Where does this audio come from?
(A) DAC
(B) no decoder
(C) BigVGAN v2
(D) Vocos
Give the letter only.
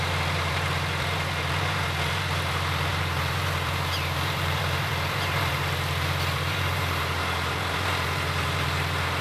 C